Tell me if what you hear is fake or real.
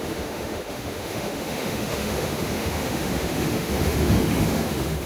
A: fake